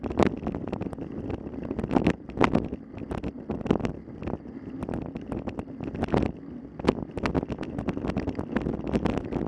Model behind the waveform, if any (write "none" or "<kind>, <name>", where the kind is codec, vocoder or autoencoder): none